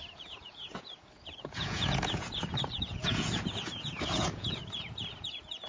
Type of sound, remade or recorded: remade